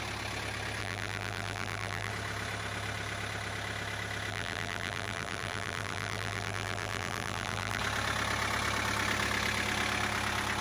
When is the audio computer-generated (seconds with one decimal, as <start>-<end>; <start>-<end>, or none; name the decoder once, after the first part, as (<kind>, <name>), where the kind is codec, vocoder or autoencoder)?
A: 0.8-2.1 (vocoder, BigVGAN v2); 4.3-7.8